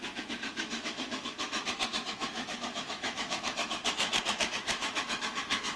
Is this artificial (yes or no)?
yes